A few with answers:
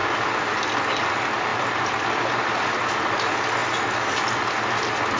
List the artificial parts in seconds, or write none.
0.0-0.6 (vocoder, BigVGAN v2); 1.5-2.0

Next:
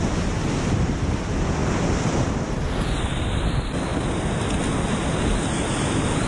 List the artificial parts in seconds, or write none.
none

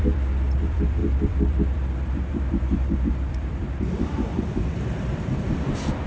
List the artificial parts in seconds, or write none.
0.0-6.1 (vocoder, BigVGAN v2)

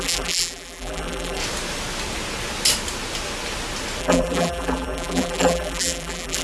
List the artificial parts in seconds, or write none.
0.0-1.4 (vocoder, BigVGAN v2); 4.0-6.4

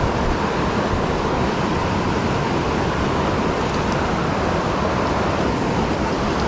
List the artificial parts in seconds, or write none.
0.0-1.8 (vocoder, BigVGAN v2); 4.6-6.5

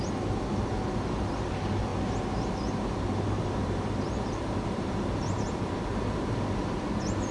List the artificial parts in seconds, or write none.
1.9-6.3 (vocoder, BigVGAN v2)

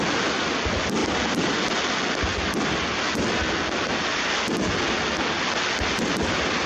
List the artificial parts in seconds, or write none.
1.0-1.6 (vocoder, BigVGAN v2)

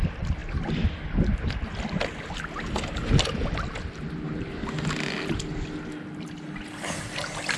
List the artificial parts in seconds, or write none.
none